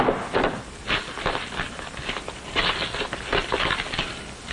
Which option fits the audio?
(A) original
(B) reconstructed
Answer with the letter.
A